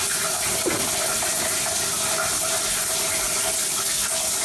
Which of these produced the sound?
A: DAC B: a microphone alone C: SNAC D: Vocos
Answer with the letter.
B